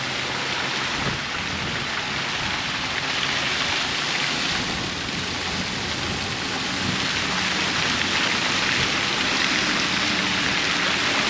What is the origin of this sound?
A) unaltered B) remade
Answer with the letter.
A